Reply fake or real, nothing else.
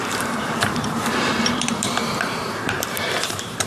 fake